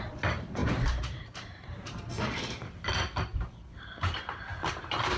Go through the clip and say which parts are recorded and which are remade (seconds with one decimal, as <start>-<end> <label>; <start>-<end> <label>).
0.0-0.6 recorded; 0.6-2.0 remade; 2.0-3.3 recorded; 3.3-4.7 remade; 4.7-5.2 recorded